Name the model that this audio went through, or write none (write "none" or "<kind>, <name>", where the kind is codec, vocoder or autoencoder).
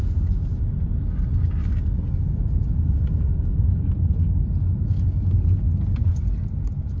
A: none